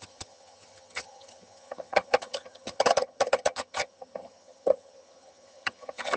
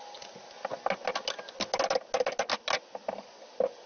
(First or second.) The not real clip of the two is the first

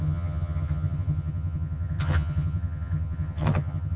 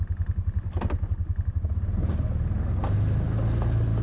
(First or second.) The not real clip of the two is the first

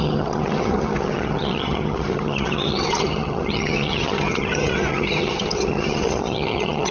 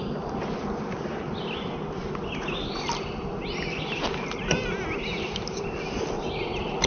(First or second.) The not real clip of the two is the first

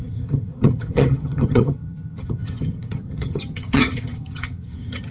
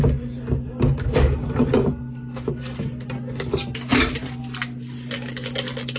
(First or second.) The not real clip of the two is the first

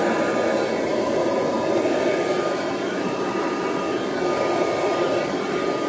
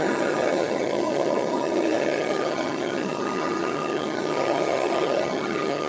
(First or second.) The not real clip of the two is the second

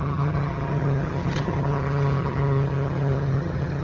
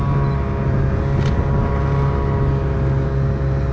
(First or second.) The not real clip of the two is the first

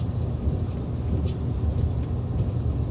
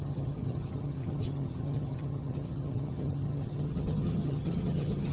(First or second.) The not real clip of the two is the second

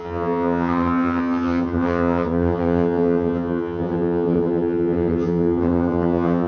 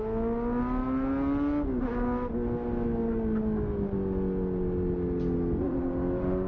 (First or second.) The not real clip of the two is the first